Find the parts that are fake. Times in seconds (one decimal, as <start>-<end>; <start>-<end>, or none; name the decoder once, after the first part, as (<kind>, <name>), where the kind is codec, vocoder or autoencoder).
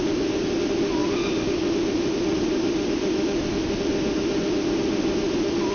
none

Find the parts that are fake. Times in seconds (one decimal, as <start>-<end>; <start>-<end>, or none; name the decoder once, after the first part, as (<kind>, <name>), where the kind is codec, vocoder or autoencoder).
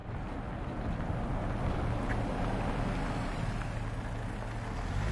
none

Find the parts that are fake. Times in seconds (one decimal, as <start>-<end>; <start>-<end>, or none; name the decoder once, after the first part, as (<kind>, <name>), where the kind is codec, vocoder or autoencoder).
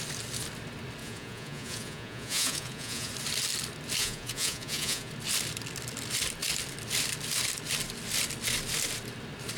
1.0-3.1 (vocoder, Vocos); 4.0-5.1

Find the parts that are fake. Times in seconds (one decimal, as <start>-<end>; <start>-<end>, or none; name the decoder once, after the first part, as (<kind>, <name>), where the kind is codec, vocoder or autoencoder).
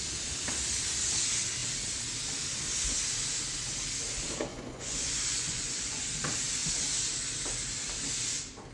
4.5-6.0 (vocoder, Vocos)